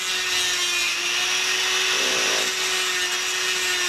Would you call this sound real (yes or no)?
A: yes